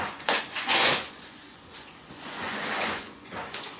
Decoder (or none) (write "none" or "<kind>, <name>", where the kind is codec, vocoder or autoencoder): vocoder, Vocos